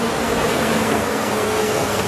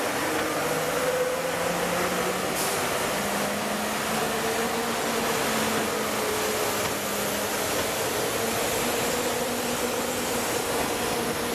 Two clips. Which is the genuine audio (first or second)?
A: second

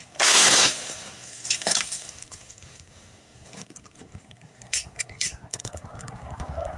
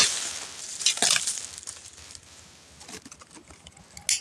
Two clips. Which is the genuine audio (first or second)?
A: second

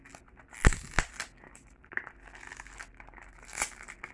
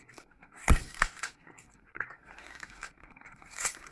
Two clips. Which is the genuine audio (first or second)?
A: first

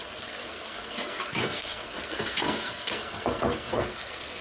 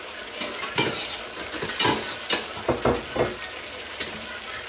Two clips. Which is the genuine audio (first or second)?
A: second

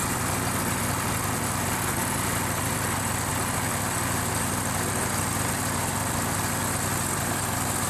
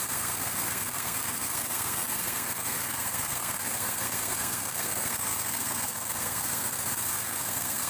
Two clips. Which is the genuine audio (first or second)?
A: first